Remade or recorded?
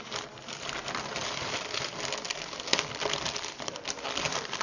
recorded